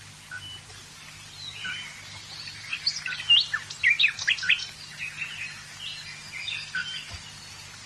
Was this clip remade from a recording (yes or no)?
no